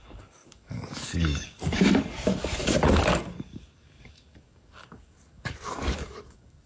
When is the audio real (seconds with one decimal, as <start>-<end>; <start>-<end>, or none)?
none